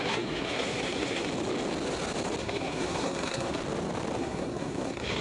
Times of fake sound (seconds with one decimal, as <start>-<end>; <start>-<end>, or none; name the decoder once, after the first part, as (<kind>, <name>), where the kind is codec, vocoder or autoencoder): 0.0-1.3 (codec, SNAC); 2.4-3.6; 4.2-5.2